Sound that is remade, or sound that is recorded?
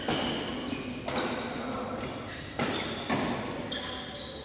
recorded